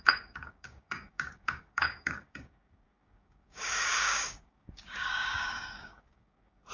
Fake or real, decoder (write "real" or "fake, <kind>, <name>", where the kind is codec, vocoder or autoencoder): fake, codec, DAC